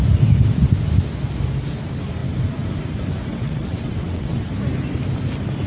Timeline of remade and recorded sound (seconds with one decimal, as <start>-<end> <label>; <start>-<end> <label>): 0.0-3.3 recorded; 3.3-4.5 remade; 4.5-5.7 recorded